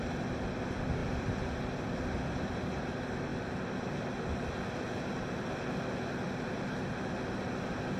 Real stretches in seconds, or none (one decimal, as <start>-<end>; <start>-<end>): 0.0-1.0; 2.5-8.0